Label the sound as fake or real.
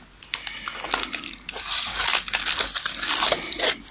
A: real